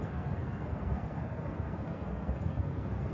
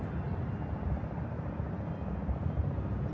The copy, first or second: first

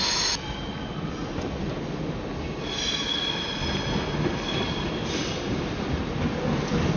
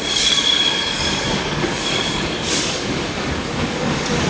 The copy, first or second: second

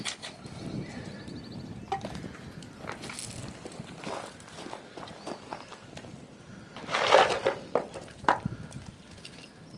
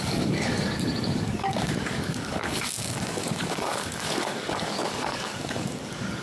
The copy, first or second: second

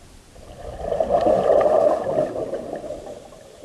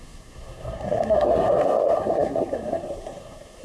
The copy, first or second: second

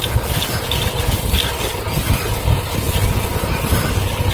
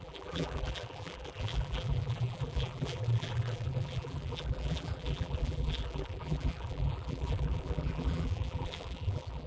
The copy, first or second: second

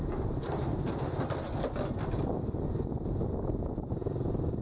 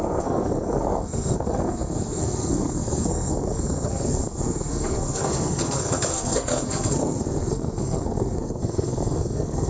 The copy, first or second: second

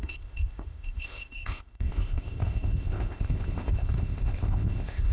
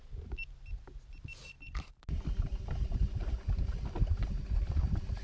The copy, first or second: first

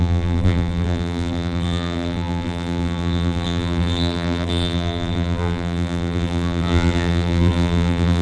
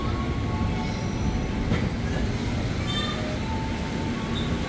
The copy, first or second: first